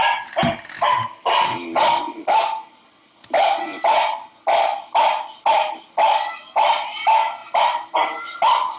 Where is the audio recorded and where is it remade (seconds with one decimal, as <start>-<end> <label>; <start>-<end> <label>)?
0.0-8.8 recorded